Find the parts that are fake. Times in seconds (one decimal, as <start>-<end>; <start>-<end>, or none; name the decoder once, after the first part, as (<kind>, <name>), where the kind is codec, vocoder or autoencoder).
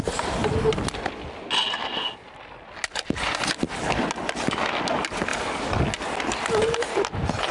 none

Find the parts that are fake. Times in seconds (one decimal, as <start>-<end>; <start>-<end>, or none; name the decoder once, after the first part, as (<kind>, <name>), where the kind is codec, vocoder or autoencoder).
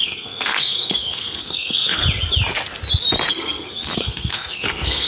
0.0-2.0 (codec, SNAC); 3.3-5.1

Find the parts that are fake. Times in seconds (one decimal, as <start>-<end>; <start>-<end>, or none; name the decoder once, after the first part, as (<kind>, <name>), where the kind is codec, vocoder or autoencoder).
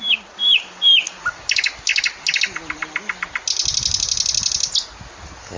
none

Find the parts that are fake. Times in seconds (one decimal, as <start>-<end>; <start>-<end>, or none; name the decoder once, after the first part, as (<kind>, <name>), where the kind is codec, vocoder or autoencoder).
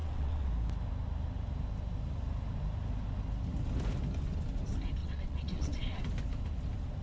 0.0-0.5 (vocoder, WaveNeXt); 5.0-6.0